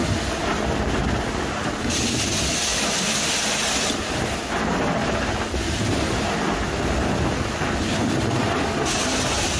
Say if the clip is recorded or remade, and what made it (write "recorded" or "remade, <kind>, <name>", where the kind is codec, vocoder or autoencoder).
recorded